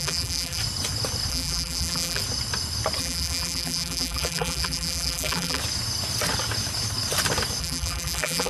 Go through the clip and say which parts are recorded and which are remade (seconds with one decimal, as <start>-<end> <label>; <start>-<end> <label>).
0.0-0.6 remade; 0.6-1.3 recorded; 1.3-2.2 remade; 2.2-3.0 recorded; 3.0-5.6 remade; 5.6-7.6 recorded; 7.6-8.5 remade